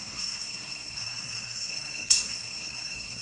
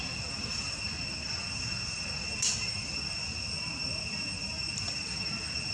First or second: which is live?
second